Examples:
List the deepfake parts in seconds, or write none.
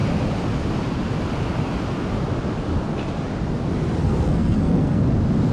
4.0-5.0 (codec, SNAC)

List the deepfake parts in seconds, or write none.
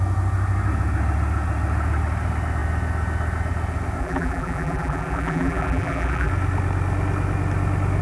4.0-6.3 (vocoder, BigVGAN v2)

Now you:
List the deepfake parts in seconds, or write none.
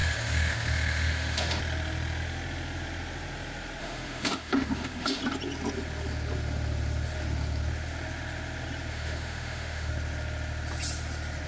0.0-1.6 (autoencoder, DAC-VAE); 3.8-5.2; 8.9-9.9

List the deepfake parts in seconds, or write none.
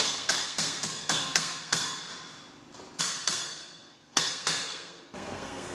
0.0-2.1 (codec, SNAC); 3.0-5.7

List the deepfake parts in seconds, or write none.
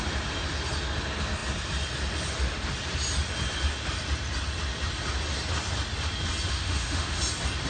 6.5-7.2 (autoencoder, DAC-VAE)